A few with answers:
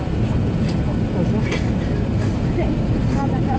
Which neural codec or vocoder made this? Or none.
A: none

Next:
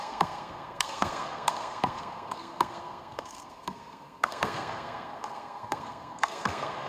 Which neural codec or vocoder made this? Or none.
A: codec, SNAC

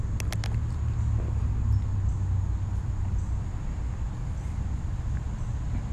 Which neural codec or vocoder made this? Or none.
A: none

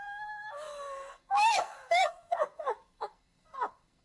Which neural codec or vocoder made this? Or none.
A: codec, SNAC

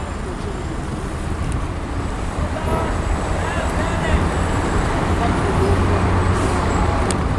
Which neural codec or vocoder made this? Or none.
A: vocoder, BigVGAN v2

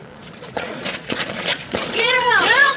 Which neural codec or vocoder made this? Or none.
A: vocoder, Vocos